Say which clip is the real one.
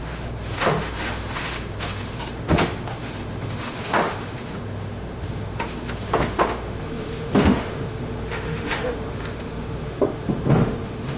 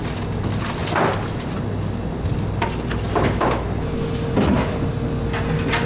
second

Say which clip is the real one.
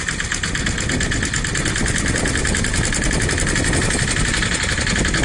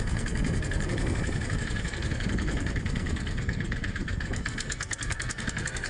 first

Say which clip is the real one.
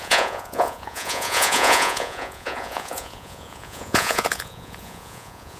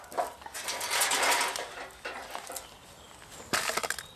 second